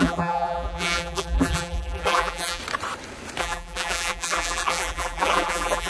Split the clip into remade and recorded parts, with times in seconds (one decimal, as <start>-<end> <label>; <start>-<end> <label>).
0.0-2.6 remade; 2.6-3.4 recorded; 3.4-5.9 remade